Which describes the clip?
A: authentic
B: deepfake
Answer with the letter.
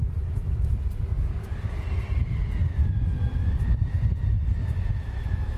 A